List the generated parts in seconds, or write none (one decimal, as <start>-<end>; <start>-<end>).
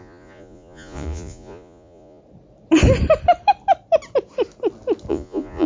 0.0-2.2; 5.1-5.7